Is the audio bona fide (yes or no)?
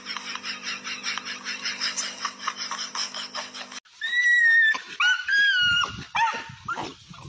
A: yes